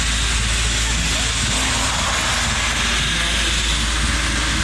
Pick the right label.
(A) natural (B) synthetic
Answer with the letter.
A